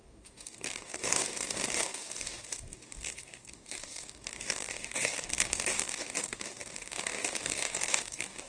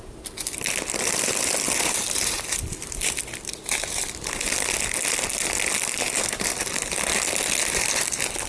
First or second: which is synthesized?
first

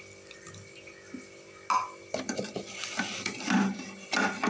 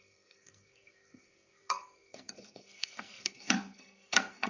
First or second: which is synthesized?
second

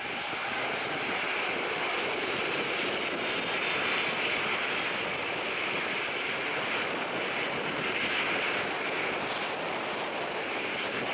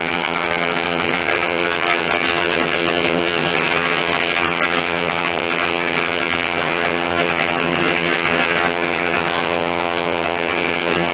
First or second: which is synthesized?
second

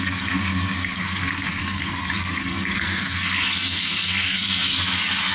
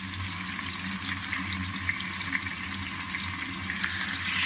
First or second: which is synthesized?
first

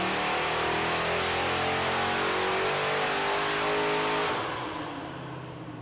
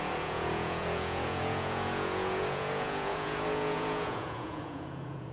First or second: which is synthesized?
second